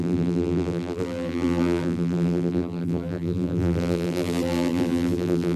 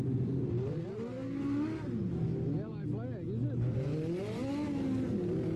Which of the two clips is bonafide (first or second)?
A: second